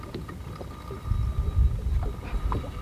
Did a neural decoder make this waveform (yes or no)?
no